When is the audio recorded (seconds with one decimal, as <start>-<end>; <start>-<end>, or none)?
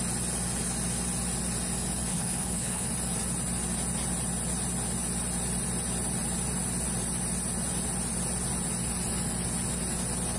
0.0-2.1; 2.9-10.4